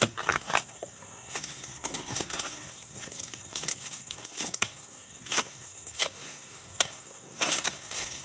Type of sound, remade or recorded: remade